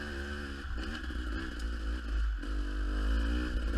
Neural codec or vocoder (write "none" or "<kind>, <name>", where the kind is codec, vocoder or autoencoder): none